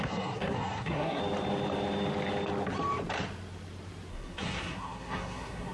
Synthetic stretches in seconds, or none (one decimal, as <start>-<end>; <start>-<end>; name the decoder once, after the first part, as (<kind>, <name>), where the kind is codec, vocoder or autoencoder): 0.0-1.2 (codec, SNAC); 4.1-5.7